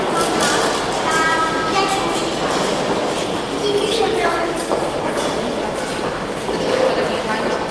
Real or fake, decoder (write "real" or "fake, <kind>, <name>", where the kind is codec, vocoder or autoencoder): real